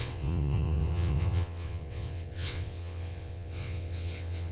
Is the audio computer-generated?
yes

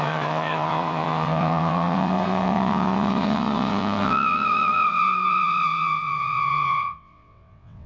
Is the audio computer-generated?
yes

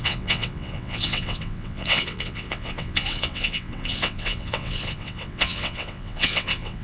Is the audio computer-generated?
yes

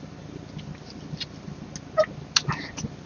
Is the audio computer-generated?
no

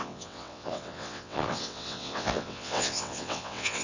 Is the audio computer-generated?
yes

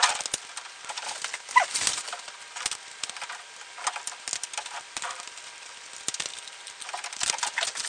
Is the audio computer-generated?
no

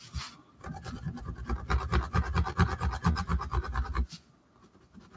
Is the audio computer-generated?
no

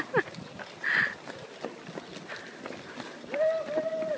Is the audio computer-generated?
no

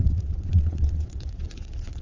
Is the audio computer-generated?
yes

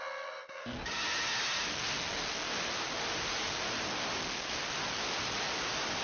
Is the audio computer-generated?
no